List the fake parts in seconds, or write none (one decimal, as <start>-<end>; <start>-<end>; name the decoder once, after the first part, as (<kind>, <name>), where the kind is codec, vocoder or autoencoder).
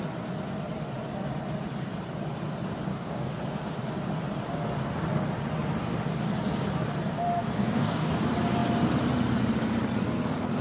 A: 2.9-3.4 (codec, DAC); 7.6-8.1